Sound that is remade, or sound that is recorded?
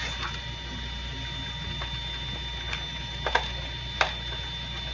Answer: recorded